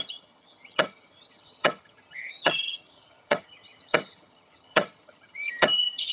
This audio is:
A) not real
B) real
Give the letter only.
A